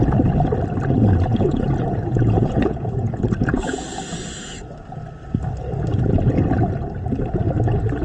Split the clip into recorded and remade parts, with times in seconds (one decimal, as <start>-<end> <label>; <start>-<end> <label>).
0.0-1.3 recorded; 1.3-3.8 remade; 3.8-8.0 recorded